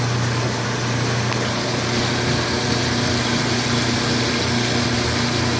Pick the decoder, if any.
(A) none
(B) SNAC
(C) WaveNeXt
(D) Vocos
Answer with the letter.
A